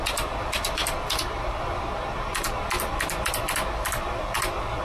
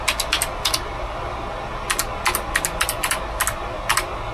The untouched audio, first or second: second